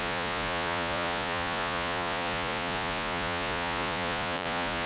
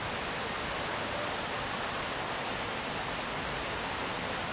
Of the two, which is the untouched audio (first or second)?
second